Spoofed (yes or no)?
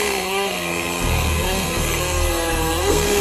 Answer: yes